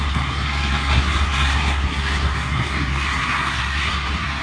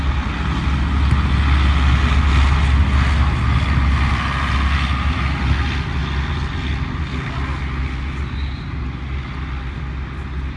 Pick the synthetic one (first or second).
first